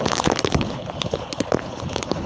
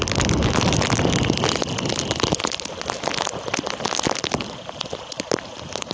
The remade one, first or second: first